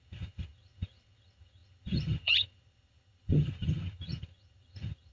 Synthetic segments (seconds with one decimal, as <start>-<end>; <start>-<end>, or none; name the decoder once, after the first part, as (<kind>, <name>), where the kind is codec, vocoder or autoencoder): 0.0-5.1 (vocoder, HiFi-GAN)